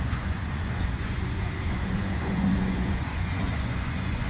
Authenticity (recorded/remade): remade